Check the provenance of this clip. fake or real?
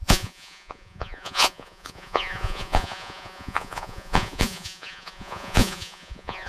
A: fake